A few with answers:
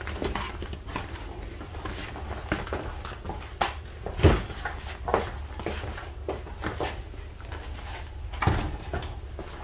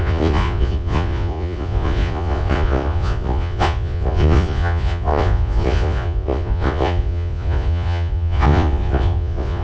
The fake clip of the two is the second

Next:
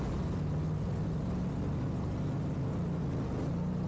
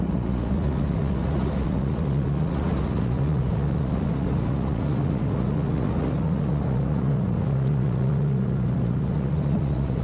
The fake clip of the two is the second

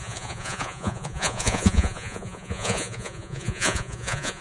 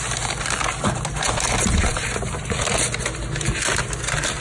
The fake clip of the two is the first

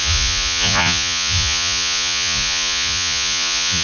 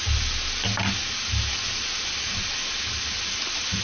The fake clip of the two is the first